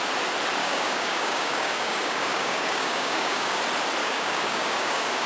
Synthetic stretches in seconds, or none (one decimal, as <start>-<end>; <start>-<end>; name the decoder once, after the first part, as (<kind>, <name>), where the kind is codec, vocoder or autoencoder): 0.6-3.6 (codec, DAC); 4.0-5.3